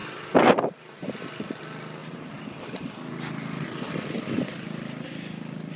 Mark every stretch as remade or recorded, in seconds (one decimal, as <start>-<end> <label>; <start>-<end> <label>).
0.0-0.7 remade; 0.7-2.0 recorded; 2.0-4.1 remade; 4.1-5.8 recorded